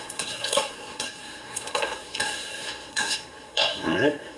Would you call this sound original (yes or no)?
no